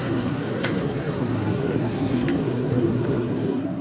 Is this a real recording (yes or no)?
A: no